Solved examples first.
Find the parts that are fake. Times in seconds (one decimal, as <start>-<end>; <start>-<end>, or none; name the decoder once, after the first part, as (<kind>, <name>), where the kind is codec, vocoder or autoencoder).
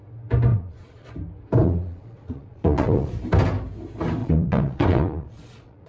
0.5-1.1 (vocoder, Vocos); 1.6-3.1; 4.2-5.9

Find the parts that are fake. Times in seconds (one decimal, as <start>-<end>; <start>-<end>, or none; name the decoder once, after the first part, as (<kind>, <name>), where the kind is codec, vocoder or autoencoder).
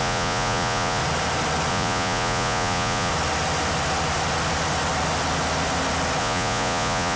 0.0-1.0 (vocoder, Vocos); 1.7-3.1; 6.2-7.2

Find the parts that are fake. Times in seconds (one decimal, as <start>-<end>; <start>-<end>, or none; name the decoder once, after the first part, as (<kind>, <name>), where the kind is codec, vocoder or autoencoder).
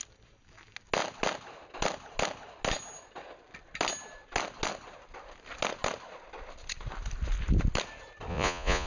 8.3-8.9 (vocoder, Vocos)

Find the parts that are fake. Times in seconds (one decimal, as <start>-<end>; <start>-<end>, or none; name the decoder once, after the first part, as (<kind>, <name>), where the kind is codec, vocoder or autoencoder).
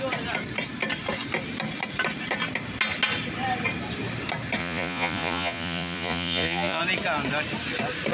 4.6-6.8 (vocoder, Vocos)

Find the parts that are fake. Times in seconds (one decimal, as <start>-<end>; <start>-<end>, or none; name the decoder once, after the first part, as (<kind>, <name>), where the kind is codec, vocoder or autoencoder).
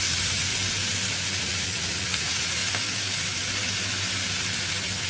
0.0-0.5 (vocoder, Vocos); 1.1-2.6